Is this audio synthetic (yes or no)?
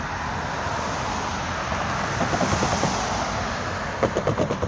no